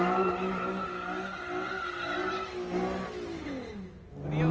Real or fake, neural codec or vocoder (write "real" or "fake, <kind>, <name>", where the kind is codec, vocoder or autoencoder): real